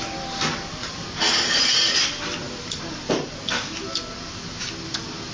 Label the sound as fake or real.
real